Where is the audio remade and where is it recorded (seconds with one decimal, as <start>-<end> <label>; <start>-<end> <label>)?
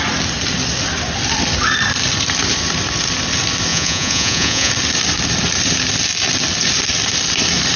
0.0-3.7 recorded; 3.7-4.7 remade; 4.7-7.8 recorded